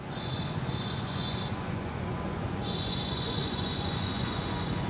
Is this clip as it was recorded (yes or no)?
no